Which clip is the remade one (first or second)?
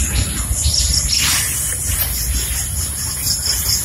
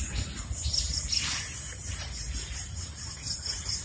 second